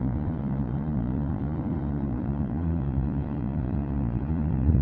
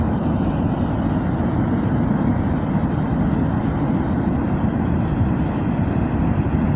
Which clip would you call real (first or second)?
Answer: second